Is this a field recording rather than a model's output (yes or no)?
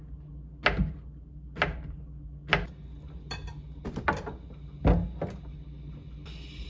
yes